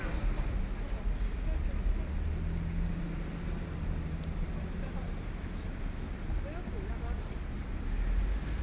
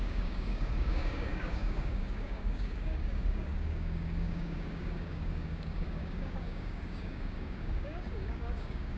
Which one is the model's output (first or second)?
second